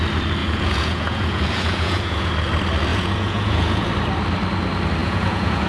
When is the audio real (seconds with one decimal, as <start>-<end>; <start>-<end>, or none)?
0.0-0.4; 2.3-2.9; 3.9-5.0

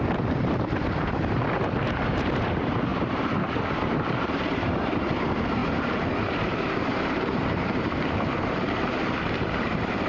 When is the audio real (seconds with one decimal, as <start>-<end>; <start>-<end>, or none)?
none

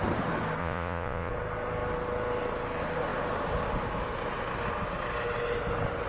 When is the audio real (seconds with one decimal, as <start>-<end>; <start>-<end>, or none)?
0.0-0.6; 1.3-6.1

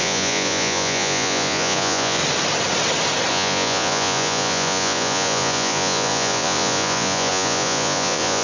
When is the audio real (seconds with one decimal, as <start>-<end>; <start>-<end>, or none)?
2.2-3.3

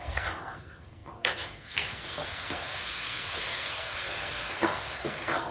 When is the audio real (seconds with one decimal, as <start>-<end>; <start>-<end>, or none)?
none